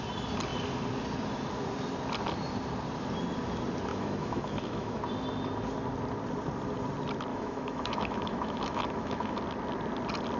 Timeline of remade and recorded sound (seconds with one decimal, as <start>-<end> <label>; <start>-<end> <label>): 0.0-3.9 recorded; 3.9-5.0 remade; 5.0-7.3 recorded; 7.3-9.4 remade; 9.4-10.4 recorded